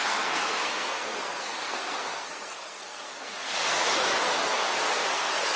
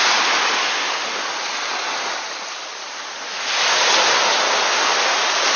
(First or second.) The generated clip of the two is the first